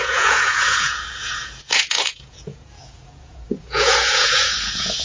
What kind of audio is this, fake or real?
fake